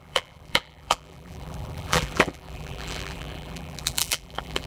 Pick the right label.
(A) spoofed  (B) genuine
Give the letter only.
A